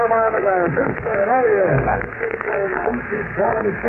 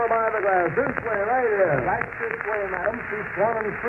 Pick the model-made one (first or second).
first